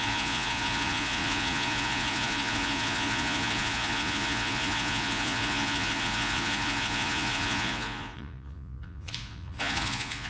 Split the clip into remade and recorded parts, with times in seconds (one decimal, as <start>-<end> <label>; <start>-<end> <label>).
0.0-10.3 remade